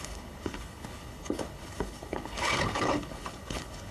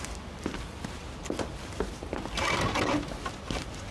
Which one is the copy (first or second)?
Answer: first